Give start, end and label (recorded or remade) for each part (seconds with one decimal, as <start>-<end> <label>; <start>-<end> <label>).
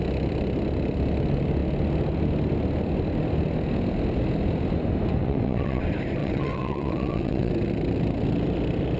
0.0-5.2 recorded; 5.2-5.8 remade; 5.8-6.2 recorded; 6.2-7.5 remade; 7.5-9.0 recorded